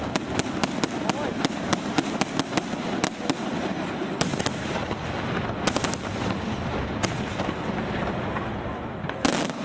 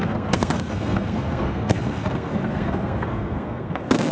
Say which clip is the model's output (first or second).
second